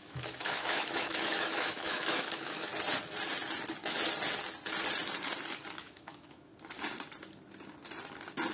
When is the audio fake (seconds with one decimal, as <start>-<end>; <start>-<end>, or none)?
0.0-2.7; 5.7-6.5